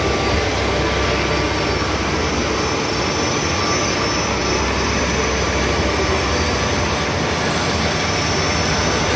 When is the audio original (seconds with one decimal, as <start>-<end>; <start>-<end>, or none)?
0.0-9.2